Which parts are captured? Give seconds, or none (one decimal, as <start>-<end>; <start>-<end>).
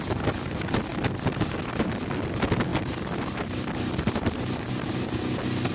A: 0.0-0.9; 1.9-5.7